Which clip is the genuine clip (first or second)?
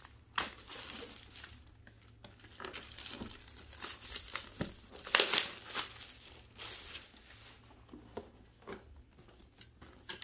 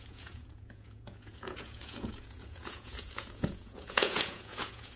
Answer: first